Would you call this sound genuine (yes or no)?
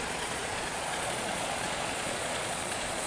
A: no